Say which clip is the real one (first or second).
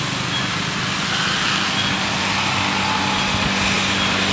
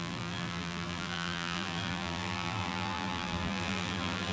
first